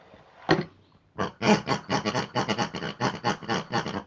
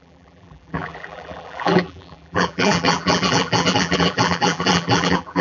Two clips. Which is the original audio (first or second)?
first